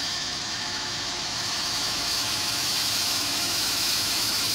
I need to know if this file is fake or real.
fake